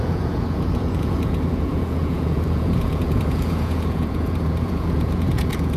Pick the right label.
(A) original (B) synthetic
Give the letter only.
B